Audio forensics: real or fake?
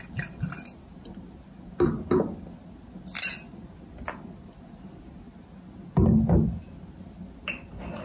real